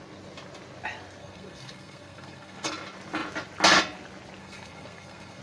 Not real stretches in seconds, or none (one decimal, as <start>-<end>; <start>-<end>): 1.2-2.7; 4.4-5.4